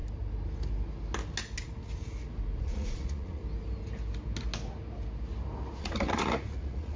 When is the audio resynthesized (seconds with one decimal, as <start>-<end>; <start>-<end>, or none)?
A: 2.6-3.4; 5.8-7.0